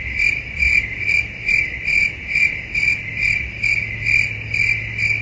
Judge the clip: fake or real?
real